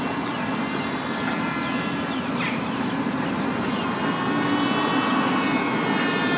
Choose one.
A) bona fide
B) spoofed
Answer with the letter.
A